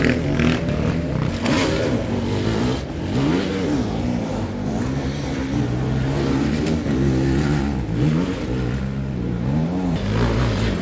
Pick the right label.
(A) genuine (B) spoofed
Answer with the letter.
A